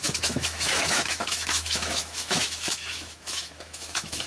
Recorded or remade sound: remade